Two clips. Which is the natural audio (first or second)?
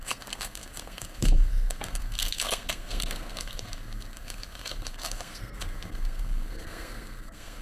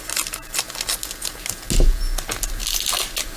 second